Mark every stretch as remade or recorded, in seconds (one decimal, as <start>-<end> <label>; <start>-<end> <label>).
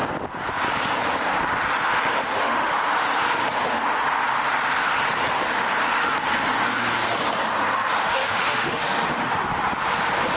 0.0-2.2 recorded; 2.2-2.7 remade; 2.7-8.0 recorded; 8.0-9.5 remade; 9.5-10.4 recorded